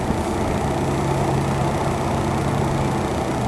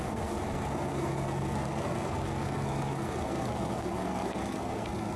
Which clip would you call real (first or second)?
first